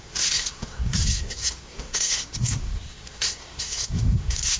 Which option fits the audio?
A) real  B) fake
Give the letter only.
B